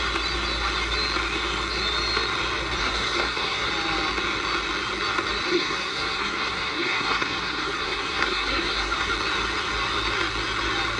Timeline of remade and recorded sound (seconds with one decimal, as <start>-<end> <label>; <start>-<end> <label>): 0.0-2.8 recorded; 2.8-3.7 remade; 3.7-5.5 recorded; 5.5-9.1 remade; 9.1-11.0 recorded